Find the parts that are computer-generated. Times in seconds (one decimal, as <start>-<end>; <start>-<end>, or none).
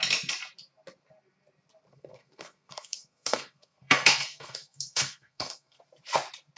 1.9-5.8